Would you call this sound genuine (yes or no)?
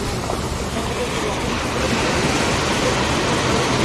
yes